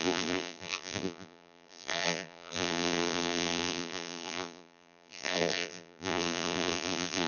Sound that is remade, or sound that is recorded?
remade